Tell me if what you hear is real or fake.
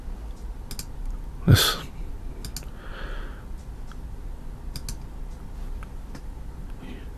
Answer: real